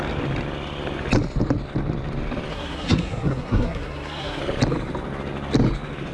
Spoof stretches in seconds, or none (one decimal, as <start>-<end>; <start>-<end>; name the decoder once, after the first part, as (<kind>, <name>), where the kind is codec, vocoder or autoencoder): 2.5-4.4 (codec, SNAC)